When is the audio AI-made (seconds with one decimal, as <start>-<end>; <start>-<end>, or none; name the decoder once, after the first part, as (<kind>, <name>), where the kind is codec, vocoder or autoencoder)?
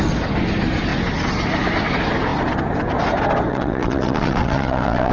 3.5-5.1 (vocoder, WaveNeXt)